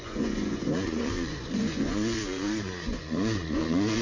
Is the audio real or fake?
fake